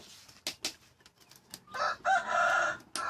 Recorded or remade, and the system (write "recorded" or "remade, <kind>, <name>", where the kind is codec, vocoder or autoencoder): recorded